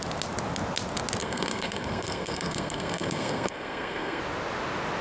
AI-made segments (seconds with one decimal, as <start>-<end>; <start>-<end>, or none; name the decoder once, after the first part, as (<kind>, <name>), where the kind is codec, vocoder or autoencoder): 1.2-4.2 (codec, SNAC)